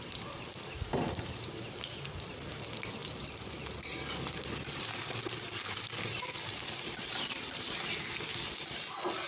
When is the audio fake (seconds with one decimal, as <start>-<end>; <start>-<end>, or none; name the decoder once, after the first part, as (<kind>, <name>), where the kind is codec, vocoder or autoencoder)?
3.0-8.2 (vocoder, BigVGAN v2)